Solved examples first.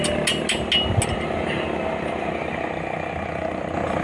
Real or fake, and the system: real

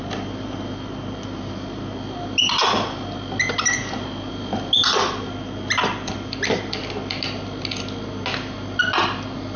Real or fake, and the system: real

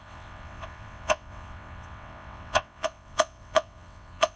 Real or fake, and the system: fake, vocoder, WaveNeXt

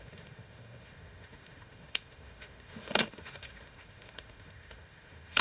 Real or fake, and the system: fake, autoencoder, DAC-VAE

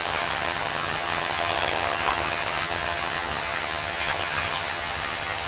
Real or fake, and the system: fake, vocoder, HiFi-GAN